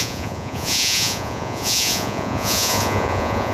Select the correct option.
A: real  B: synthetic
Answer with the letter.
B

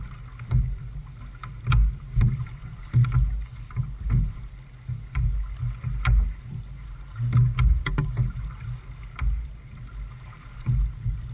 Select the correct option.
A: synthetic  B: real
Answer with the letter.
B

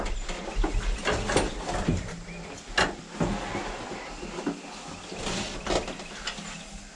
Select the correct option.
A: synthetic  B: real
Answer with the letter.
B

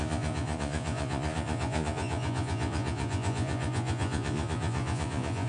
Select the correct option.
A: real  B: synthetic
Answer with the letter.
B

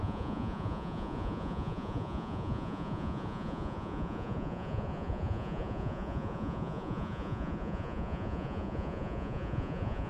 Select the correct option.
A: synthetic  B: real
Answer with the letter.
A